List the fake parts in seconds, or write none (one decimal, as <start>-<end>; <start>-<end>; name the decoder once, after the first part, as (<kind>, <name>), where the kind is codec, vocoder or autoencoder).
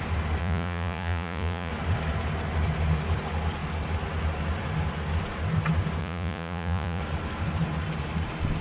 0.4-1.7 (vocoder, Vocos); 6.0-7.0